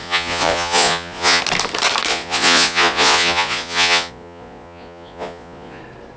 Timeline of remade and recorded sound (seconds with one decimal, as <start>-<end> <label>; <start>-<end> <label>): 0.0-1.4 remade; 1.4-2.1 recorded; 2.1-5.8 remade; 5.8-6.2 recorded